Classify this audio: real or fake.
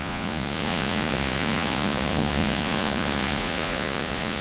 fake